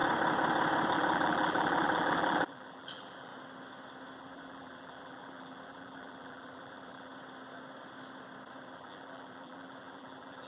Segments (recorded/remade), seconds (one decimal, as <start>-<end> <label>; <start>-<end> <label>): 0.0-0.9 recorded; 0.9-3.3 remade; 3.3-4.2 recorded; 4.2-7.1 remade; 7.1-8.7 recorded; 8.7-10.5 remade